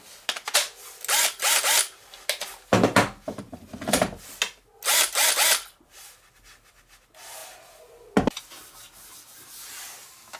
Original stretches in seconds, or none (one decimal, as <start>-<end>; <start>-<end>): 0.0-10.4